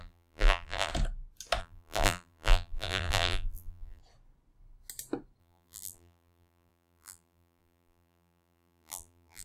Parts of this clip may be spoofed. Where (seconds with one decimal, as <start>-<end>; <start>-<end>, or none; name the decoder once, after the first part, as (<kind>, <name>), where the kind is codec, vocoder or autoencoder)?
0.0-0.9 (vocoder, BigVGAN v2); 1.6-4.0; 5.4-9.4